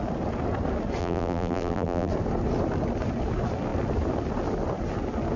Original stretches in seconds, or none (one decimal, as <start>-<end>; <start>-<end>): 0.0-1.0; 2.1-5.4